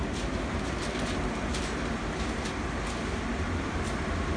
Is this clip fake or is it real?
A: real